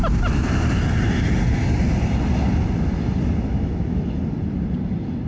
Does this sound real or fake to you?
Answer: real